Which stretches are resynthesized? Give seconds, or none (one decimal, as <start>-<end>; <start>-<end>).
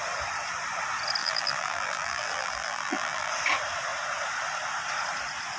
1.2-3.3